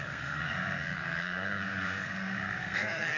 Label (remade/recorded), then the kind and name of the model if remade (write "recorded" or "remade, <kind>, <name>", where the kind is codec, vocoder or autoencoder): remade, codec, SNAC